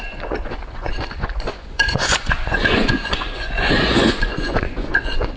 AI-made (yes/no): yes